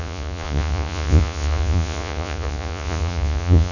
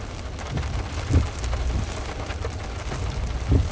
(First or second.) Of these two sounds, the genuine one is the second